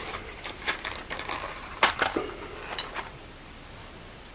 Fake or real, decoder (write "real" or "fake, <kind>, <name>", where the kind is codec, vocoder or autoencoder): fake, vocoder, BigVGAN v2